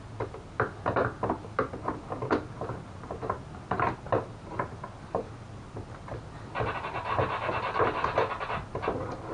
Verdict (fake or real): real